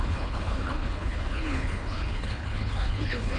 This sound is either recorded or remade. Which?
remade